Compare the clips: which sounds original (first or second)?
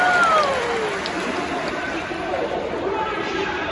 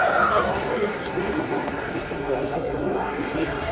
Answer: first